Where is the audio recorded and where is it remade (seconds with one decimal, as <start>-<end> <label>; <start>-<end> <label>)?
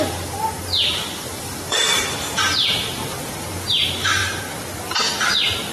0.0-3.0 remade; 3.0-3.7 recorded; 3.7-4.2 remade; 4.2-5.7 recorded